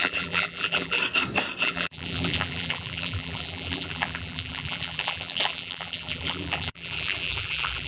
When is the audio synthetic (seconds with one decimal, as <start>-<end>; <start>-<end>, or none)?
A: 0.0-1.0; 1.6-7.9